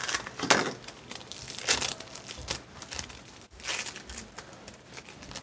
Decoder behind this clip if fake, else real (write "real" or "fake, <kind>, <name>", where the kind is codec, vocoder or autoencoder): real